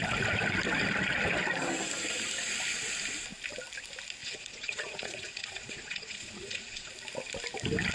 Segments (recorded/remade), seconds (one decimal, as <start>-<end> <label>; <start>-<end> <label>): 0.0-4.2 recorded; 4.2-6.9 remade; 6.9-7.9 recorded